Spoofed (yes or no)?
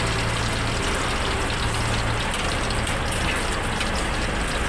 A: no